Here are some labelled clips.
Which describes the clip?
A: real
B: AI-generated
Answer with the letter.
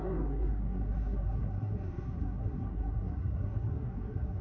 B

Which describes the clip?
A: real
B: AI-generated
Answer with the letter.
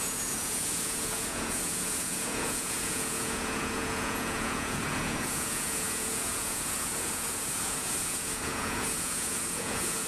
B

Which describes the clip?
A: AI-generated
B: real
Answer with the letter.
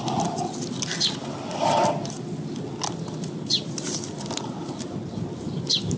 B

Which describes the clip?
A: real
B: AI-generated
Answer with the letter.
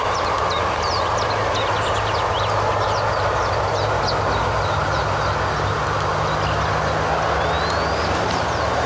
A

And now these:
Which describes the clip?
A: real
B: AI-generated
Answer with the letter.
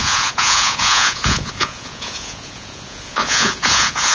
B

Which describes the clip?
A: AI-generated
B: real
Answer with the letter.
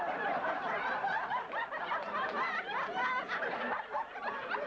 A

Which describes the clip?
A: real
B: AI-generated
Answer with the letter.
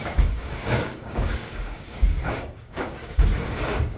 B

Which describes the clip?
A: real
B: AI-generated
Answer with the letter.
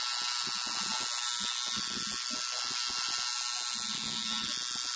A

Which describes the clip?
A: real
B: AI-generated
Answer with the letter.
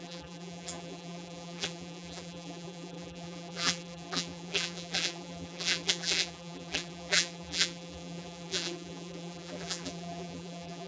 B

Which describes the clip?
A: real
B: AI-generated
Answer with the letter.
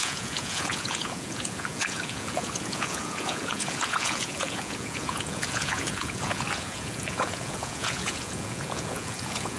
B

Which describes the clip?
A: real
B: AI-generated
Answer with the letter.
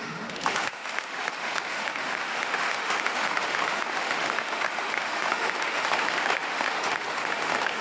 B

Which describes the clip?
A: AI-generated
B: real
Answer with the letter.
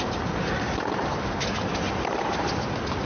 B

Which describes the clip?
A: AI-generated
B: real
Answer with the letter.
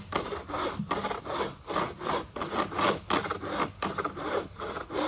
B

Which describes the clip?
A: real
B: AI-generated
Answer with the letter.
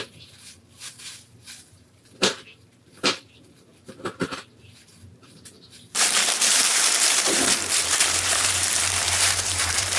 B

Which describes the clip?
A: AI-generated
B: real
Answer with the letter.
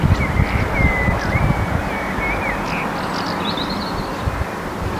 B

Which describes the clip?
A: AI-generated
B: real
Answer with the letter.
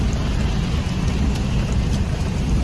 B